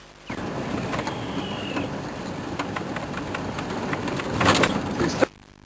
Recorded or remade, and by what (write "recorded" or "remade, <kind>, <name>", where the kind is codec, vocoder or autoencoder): recorded